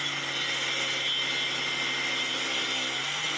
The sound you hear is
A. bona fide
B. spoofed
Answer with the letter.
A